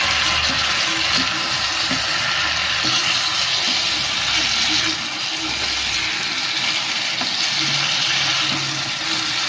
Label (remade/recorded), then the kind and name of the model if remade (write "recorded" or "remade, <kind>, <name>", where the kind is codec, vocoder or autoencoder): recorded